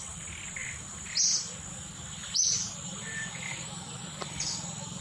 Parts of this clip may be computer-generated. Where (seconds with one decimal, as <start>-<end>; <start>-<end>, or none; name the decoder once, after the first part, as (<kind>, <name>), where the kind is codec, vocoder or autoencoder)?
2.2-4.0 (vocoder, BigVGAN v2)